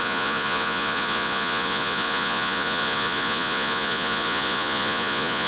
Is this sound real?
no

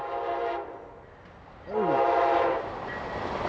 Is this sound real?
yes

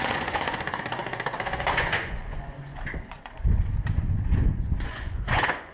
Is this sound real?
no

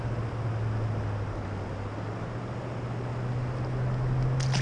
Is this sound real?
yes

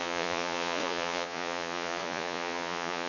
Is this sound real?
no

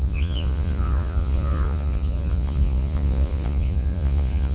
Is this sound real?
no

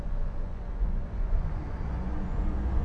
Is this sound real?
no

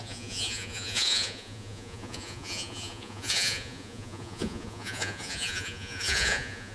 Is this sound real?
no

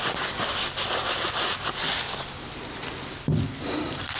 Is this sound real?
yes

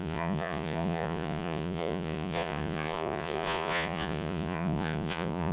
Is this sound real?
no